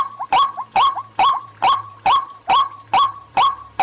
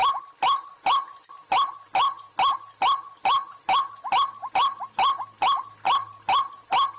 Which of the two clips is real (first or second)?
second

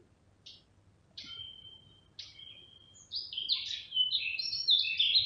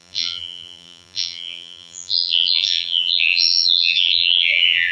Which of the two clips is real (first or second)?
first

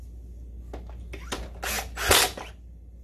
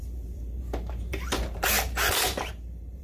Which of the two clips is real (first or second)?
first